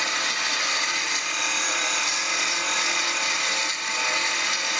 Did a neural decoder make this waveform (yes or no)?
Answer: no